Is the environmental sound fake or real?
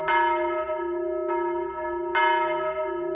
real